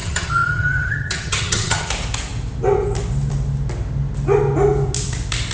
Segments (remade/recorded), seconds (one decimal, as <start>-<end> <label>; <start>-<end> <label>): 0.0-1.9 remade; 1.9-5.5 recorded